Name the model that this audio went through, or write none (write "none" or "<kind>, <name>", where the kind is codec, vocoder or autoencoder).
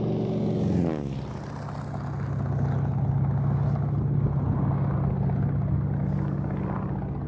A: none